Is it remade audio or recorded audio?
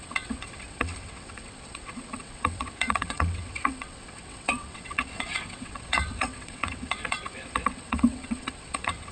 remade